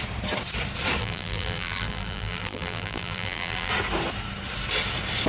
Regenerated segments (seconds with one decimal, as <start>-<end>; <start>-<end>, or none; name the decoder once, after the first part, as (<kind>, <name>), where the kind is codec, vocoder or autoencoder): 1.0-3.7 (vocoder, BigVGAN v2)

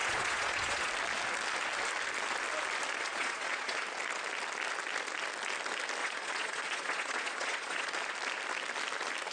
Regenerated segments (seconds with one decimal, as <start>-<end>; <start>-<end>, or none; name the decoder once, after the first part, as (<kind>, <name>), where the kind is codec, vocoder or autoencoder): 0.0-0.9 (vocoder, Vocos); 3.1-3.8; 6.0-7.9

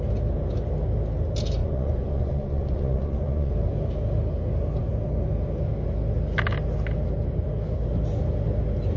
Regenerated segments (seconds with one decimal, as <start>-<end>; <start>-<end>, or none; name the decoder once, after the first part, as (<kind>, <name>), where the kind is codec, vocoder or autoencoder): 1.6-3.5 (vocoder, Vocos)

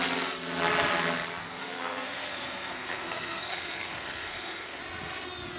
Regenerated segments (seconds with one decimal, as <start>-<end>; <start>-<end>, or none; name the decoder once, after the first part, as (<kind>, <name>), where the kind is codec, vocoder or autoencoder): 1.4-4.8 (codec, SNAC)

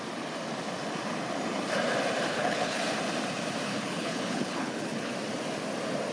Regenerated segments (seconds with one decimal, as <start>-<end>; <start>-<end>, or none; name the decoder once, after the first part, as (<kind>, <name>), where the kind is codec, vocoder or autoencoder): 2.3-2.8 (codec, HILCodec); 3.7-5.1